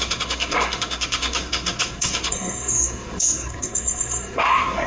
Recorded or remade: remade